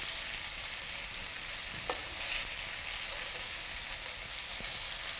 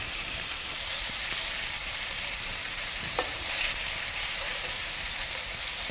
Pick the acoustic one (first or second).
first